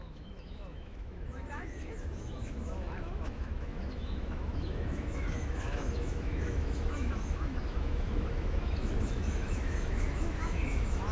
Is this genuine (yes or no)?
no